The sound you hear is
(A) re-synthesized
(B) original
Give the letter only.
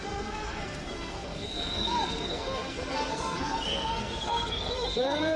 A